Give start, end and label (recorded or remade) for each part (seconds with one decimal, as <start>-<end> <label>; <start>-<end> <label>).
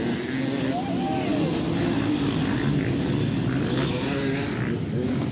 0.0-5.3 recorded